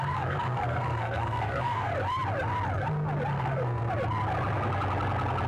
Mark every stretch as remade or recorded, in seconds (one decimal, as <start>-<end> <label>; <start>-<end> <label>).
0.0-1.9 remade; 1.9-3.3 recorded; 3.3-3.9 remade; 3.9-5.5 recorded